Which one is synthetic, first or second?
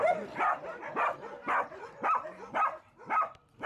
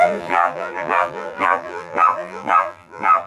second